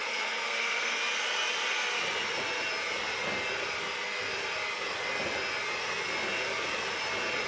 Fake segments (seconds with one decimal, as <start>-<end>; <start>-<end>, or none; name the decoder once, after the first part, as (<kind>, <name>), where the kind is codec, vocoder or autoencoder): 0.0-1.0 (codec, SNAC)